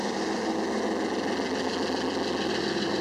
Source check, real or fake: real